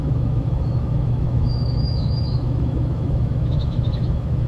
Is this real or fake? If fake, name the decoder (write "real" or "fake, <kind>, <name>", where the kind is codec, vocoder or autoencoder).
fake, autoencoder, DAC-VAE